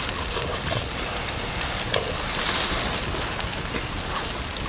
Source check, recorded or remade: recorded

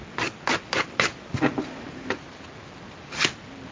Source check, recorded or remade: recorded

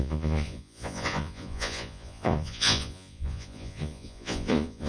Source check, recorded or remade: remade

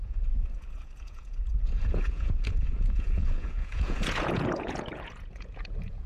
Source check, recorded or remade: remade